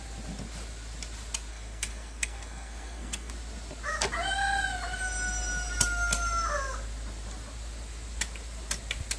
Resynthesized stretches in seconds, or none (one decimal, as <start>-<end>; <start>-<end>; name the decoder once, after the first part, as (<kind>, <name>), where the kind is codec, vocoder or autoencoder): 1.5-3.3 (codec, SNAC)